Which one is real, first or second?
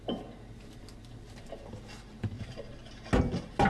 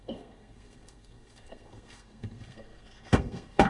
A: first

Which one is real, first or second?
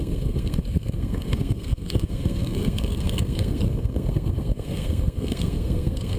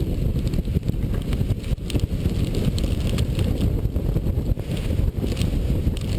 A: second